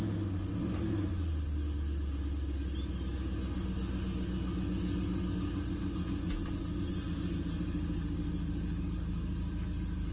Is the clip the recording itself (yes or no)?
yes